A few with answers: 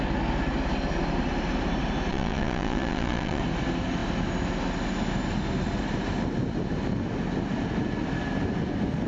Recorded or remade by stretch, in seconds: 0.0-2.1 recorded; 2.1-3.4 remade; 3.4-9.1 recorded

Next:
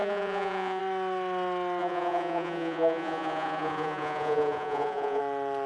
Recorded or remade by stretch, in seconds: 0.0-0.8 remade; 0.8-1.8 recorded; 1.8-5.2 remade; 5.2-5.7 recorded

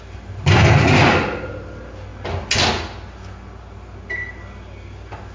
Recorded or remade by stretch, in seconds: 0.0-5.3 recorded

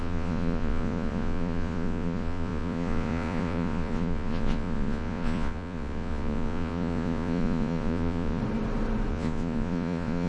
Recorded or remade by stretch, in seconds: 0.0-8.4 remade; 8.4-9.1 recorded; 9.1-10.3 remade

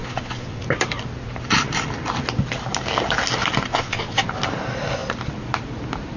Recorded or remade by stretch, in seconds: 0.0-0.6 remade; 0.6-3.7 recorded; 3.7-4.3 remade; 4.3-6.2 recorded

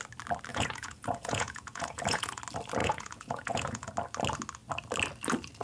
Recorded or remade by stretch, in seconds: 0.0-0.5 recorded; 0.5-2.4 remade; 2.4-2.8 recorded; 2.8-3.9 remade; 3.9-5.6 recorded

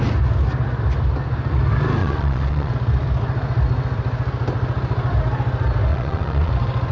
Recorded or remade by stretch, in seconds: 0.0-2.0 recorded; 2.0-2.7 remade; 2.7-5.9 recorded; 5.9-6.5 remade; 6.5-6.9 recorded

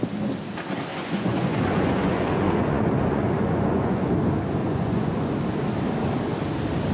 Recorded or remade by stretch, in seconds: 0.0-0.9 recorded; 0.9-4.1 remade; 4.1-4.6 recorded; 4.6-5.3 remade; 5.3-6.9 recorded